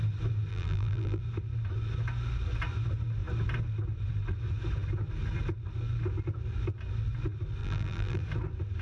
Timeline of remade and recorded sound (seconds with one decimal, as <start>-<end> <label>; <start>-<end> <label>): 0.0-0.5 recorded; 0.5-1.2 remade; 1.2-7.6 recorded; 7.6-8.2 remade; 8.2-8.8 recorded